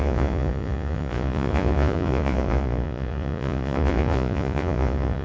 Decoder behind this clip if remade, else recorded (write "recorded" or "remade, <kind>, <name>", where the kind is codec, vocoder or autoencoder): remade, vocoder, Vocos